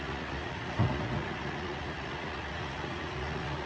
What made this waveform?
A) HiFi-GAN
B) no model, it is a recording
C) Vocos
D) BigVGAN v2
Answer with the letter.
C